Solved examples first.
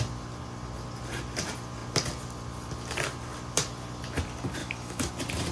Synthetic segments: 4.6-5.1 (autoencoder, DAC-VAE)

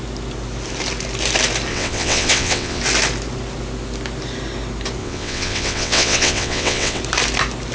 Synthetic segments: 1.7-2.8 (vocoder, WaveNeXt); 5.0-7.0

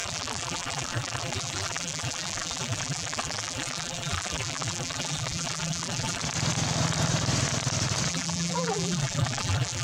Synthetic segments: 0.0-6.2 (vocoder, BigVGAN v2); 8.1-9.8

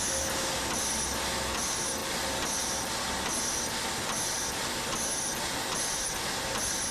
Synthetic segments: none

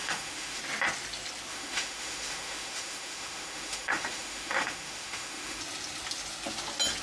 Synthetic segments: 0.0-0.6 (autoencoder, DAC-VAE); 1.5-5.6

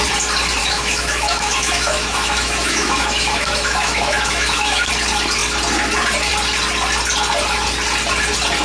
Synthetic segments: 0.6-4.9 (autoencoder, DAC-VAE)

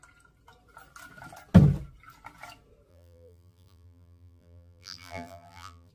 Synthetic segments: 2.9-5.9 (vocoder, BigVGAN v2)